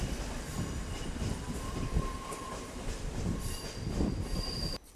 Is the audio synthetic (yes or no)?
yes